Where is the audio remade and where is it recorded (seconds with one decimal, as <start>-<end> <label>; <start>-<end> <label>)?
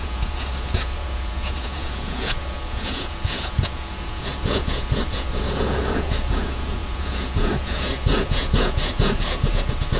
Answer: 0.0-10.0 remade